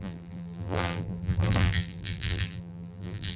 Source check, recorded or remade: remade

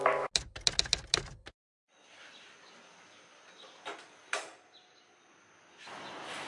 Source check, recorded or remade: recorded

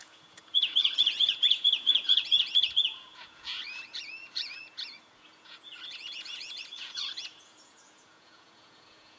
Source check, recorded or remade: remade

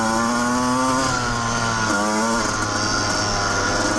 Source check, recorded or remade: recorded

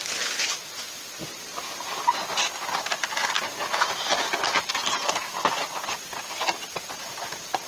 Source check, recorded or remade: recorded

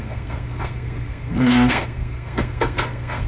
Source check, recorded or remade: remade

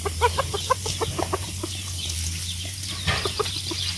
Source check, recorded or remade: recorded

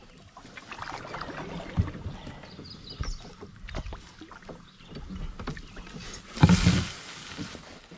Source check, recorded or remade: recorded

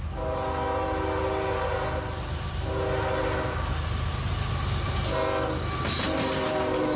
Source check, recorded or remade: recorded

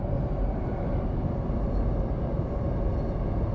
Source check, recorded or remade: recorded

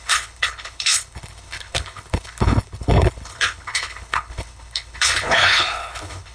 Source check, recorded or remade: remade